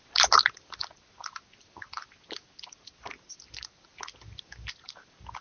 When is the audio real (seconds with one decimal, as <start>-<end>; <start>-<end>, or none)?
0.0-5.4